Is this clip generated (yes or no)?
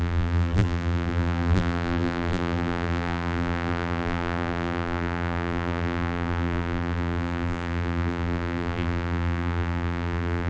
yes